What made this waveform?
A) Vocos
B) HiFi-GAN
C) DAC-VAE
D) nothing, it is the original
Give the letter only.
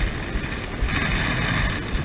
D